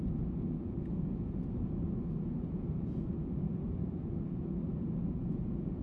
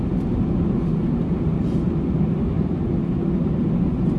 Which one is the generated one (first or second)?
first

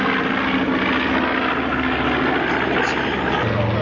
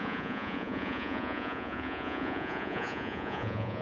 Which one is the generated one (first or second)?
second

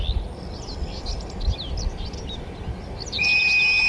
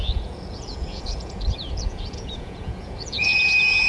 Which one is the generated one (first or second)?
second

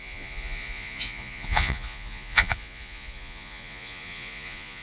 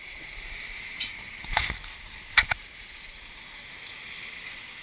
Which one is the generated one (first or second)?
first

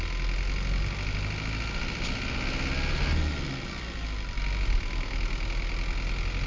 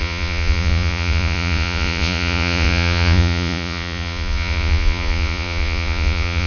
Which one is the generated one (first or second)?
second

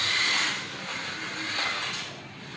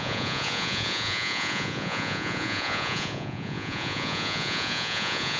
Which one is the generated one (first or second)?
second